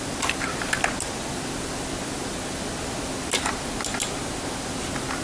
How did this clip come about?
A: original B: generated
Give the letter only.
A